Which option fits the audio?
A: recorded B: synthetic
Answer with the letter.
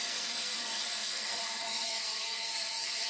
B